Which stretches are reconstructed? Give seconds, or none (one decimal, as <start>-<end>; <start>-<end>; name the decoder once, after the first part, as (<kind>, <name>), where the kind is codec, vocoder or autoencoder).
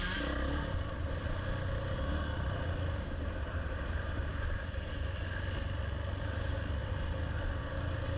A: none